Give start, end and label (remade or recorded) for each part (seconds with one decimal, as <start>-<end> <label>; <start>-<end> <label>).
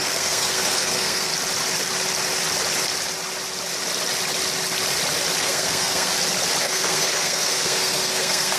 0.0-1.3 remade; 1.3-5.4 recorded; 5.4-6.1 remade; 6.1-6.6 recorded; 6.6-8.6 remade